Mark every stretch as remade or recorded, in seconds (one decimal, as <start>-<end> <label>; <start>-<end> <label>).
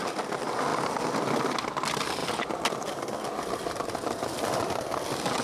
0.0-5.4 recorded